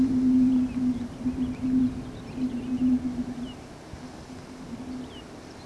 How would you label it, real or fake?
real